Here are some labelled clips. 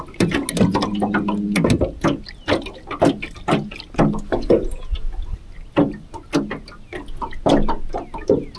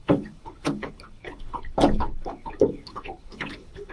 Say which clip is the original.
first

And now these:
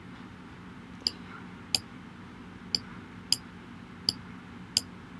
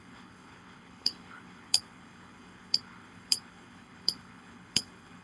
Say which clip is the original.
first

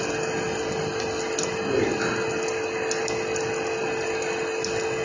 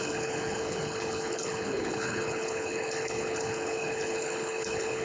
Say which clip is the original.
first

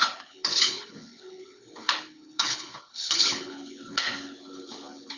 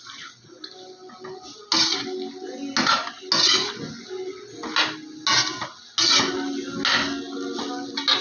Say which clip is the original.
second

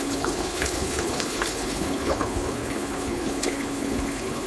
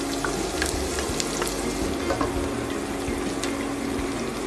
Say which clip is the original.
second